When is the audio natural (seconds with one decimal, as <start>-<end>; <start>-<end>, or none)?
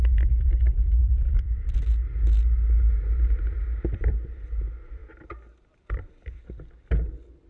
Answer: 0.0-1.0; 1.8-5.0; 6.4-7.5